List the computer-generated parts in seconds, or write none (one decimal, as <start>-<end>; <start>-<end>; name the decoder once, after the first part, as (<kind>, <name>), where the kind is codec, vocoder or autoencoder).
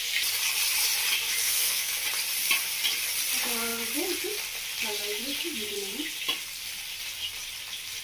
1.4-1.9 (codec, SNAC)